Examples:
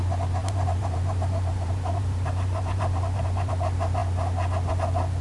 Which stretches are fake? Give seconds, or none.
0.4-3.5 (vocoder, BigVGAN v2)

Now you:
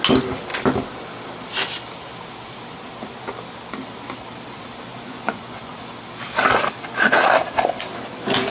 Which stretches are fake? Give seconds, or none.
4.9-5.8 (vocoder, Vocos)

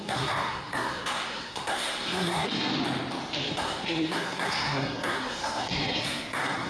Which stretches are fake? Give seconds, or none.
0.0-2.7 (codec, SNAC); 3.5-6.7